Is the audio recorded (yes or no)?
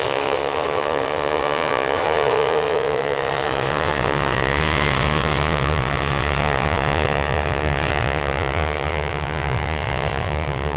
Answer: no